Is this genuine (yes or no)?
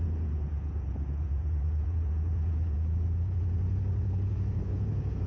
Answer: no